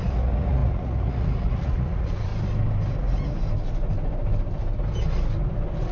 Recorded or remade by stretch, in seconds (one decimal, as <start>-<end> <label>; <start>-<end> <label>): 0.0-2.3 remade; 2.3-5.9 recorded